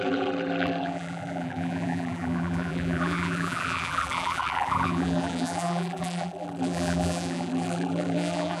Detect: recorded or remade remade